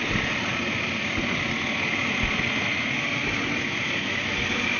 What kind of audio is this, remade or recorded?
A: recorded